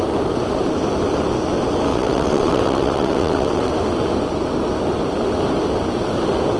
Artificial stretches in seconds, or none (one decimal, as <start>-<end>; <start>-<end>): 1.9-3.7